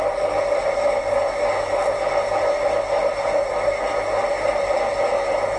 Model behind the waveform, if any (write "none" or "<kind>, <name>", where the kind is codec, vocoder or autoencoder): none